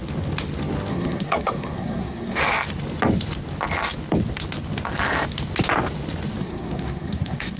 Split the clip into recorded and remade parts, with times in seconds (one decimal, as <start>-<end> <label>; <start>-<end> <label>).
0.0-0.9 recorded; 0.9-2.4 remade; 2.4-6.4 recorded; 6.4-7.6 remade